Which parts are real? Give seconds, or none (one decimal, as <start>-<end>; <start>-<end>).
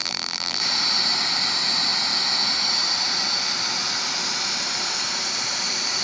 0.6-6.0